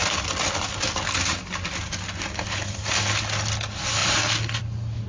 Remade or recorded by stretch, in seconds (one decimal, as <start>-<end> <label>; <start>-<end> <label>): 0.0-5.1 recorded